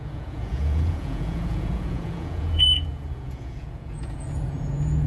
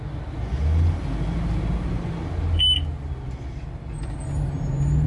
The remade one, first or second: first